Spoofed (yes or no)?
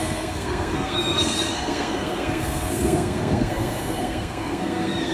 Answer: yes